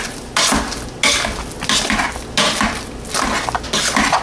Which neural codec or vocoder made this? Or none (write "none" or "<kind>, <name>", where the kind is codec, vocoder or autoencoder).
none